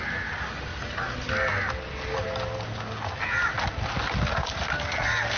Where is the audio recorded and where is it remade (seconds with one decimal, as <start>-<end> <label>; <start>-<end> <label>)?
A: 0.0-5.4 recorded